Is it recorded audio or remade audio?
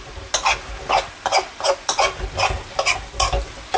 recorded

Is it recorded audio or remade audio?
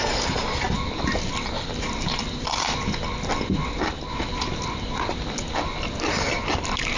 recorded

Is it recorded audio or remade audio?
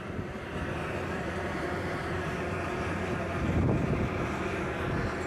recorded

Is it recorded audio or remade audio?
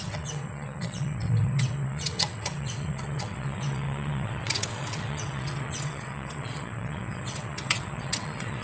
remade